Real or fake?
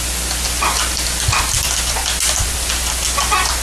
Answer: real